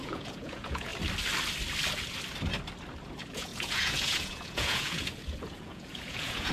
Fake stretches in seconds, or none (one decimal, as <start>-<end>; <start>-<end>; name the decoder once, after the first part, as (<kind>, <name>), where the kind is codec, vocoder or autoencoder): 0.0-0.9 (vocoder, Vocos); 3.1-6.5